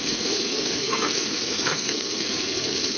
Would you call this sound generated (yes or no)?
yes